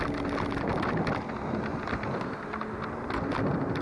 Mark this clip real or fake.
real